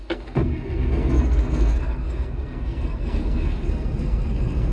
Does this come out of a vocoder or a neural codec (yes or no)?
yes